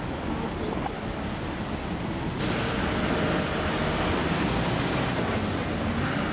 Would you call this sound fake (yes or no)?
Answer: no